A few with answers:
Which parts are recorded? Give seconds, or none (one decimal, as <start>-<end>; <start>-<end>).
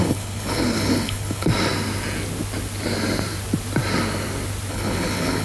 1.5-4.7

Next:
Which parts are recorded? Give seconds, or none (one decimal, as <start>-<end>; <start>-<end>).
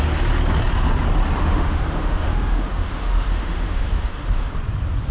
0.0-1.4; 4.5-5.1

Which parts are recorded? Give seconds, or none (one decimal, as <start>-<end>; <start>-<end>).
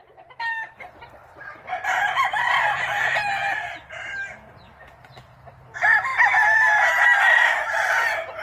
0.0-0.5; 5.1-8.4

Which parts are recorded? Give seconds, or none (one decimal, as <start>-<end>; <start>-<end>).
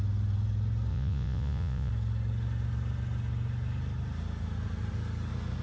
0.0-0.9; 1.9-5.6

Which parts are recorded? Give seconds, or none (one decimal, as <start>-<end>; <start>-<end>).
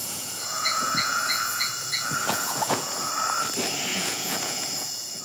3.1-3.9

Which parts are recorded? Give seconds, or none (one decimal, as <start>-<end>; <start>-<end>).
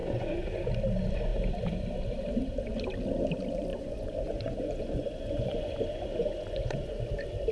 0.7-3.7; 7.0-7.5